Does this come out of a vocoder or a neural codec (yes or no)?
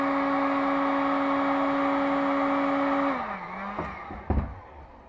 no